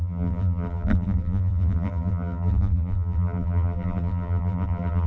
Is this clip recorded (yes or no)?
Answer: no